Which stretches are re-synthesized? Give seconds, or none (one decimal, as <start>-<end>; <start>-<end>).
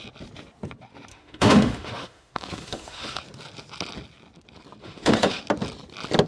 1.1-3.2; 4.8-5.4